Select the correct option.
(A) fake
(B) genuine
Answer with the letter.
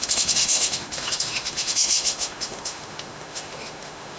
A